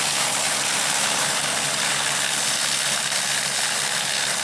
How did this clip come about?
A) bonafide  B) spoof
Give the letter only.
A